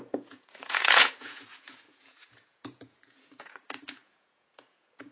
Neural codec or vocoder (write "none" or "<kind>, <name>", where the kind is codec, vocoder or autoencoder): vocoder, Vocos